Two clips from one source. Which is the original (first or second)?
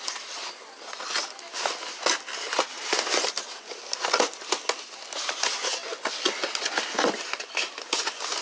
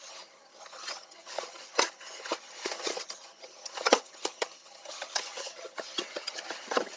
first